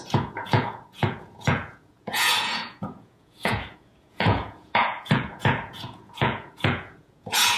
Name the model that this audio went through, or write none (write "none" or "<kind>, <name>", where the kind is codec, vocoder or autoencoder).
vocoder, Vocos